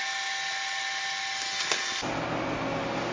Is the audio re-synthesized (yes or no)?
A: no